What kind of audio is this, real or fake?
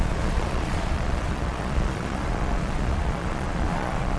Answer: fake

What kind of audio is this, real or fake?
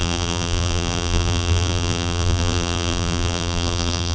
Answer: fake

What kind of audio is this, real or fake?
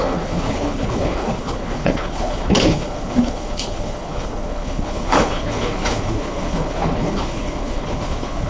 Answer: fake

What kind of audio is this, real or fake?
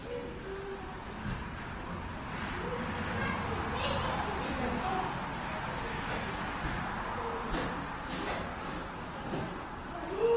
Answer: real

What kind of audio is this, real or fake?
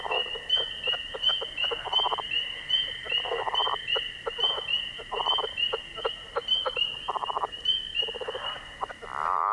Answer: real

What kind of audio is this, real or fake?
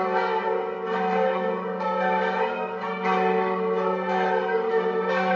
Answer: fake